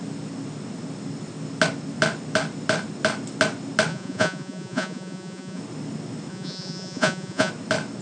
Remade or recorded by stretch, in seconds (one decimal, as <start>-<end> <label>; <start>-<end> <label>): 0.0-3.9 recorded; 3.9-5.6 remade; 5.6-6.3 recorded; 6.3-7.5 remade; 7.5-8.0 recorded